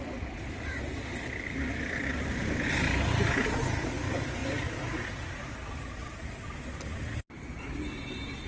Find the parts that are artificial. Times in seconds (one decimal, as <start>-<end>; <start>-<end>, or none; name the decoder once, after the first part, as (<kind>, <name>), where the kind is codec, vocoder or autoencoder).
none